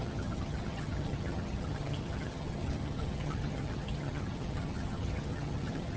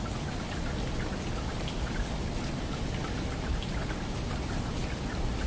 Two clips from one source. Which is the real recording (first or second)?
second